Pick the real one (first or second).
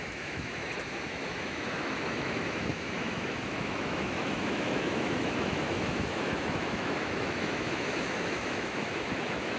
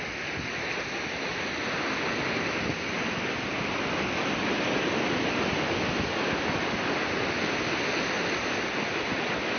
second